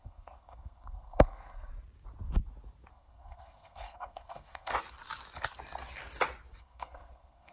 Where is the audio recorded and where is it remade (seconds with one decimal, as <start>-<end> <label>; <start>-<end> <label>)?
0.0-1.7 remade; 1.7-2.9 recorded; 2.9-4.7 remade; 4.7-6.6 recorded; 6.6-7.5 remade